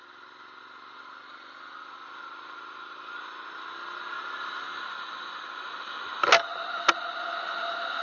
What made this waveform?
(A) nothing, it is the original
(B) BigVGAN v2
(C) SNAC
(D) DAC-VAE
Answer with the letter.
A